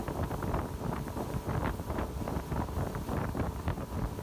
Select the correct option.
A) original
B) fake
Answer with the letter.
A